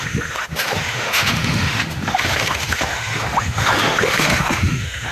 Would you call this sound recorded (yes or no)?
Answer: no